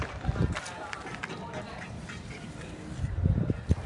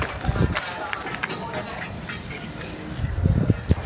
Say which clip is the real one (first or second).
second